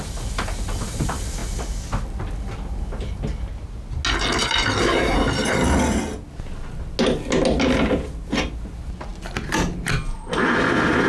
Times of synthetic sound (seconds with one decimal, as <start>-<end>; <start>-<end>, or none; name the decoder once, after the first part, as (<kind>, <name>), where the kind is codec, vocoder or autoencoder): none